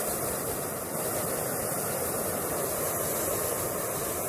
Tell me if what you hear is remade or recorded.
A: recorded